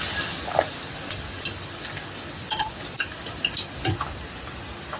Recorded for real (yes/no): yes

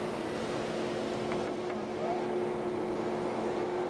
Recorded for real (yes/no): yes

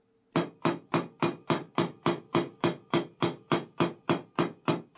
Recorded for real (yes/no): yes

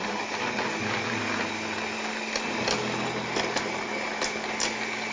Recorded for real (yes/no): yes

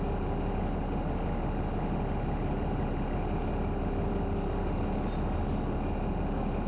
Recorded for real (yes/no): yes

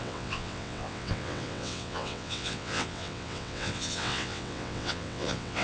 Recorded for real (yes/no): no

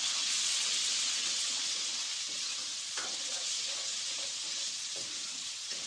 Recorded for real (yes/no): no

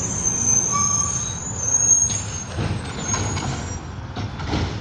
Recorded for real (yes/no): yes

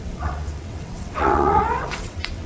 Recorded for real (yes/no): no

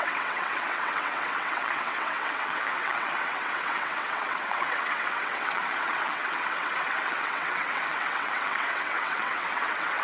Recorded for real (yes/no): no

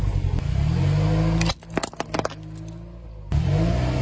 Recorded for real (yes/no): yes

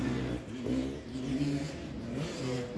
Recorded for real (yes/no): yes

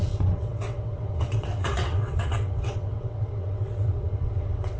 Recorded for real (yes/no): no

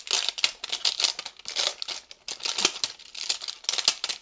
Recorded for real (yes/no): yes